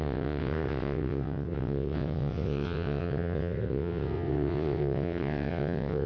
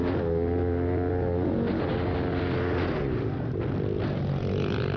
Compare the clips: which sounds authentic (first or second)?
second